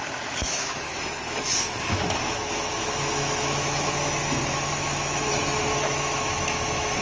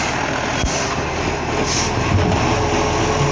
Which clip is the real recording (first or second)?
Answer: second